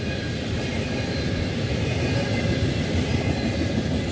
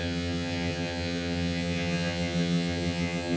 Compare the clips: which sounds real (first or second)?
first